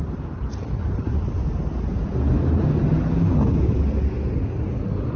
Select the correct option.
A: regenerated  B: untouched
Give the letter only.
B